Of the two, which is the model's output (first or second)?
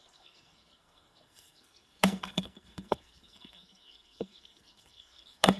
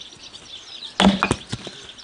first